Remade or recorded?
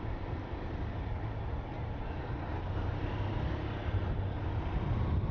recorded